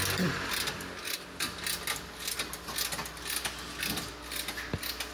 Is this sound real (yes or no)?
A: yes